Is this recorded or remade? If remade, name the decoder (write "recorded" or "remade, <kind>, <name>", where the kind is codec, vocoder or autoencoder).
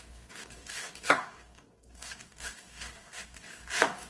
remade, codec, DAC